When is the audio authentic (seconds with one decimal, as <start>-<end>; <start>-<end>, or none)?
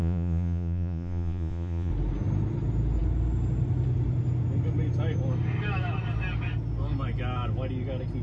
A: 1.9-8.2